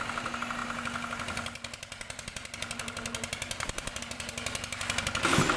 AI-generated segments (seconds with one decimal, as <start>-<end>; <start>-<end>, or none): none